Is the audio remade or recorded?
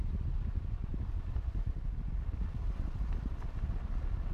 recorded